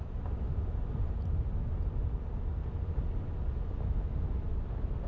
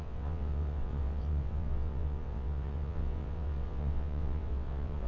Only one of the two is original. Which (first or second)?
first